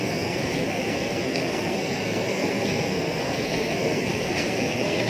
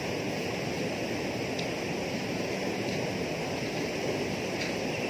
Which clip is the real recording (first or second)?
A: second